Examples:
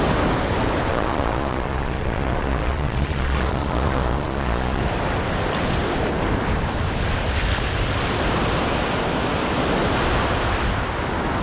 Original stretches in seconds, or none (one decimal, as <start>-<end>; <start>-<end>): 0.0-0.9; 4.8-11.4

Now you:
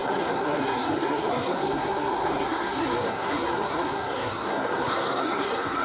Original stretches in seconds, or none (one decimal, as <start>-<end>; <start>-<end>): none

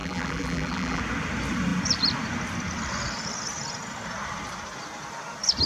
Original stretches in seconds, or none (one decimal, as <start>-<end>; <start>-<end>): 1.0-5.7

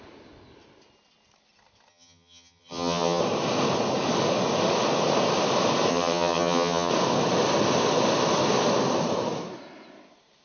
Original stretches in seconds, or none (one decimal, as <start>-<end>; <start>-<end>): 0.0-1.9; 3.2-5.9; 6.9-10.4

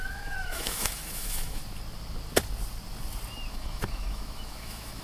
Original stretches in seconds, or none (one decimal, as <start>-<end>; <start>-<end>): 1.6-3.5

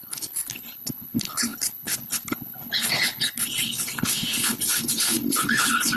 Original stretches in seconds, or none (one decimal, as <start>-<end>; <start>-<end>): none

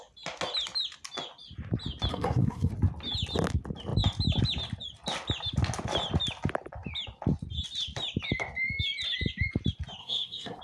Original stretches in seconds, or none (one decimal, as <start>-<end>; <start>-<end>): 0.0-2.1; 2.7-10.0